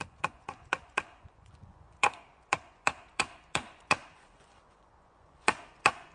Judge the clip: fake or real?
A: fake